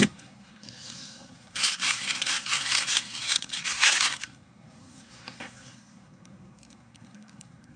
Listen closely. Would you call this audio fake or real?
fake